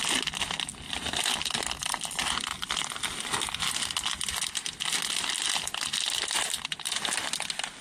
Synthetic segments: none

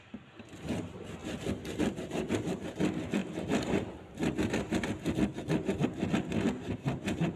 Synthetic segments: none

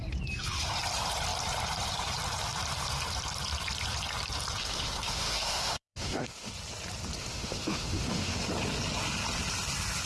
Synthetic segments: 4.6-6.5 (autoencoder, DAC-VAE); 7.2-8.4